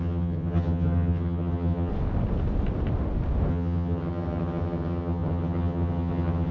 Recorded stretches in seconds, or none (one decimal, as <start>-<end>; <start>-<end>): 1.9-3.5